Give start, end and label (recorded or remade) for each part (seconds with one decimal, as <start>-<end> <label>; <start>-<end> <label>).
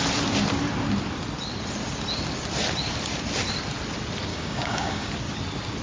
0.0-4.3 recorded; 4.3-5.1 remade; 5.1-5.8 recorded